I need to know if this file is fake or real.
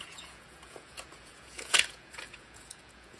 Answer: fake